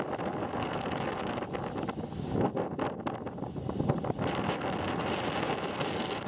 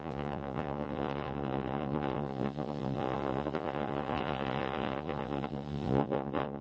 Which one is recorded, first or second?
first